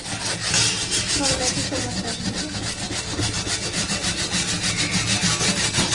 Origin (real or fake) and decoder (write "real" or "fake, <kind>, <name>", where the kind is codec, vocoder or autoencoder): real